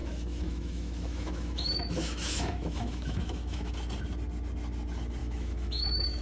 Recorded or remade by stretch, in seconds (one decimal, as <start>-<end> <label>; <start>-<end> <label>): 0.0-3.7 remade; 3.7-5.2 recorded; 5.2-6.2 remade